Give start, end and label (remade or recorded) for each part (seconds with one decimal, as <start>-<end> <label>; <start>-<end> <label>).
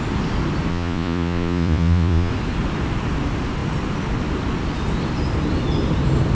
0.0-0.7 recorded; 0.7-2.3 remade; 2.3-6.3 recorded